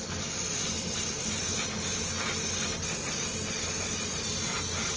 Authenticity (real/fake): real